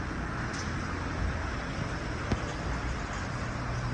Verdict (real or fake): real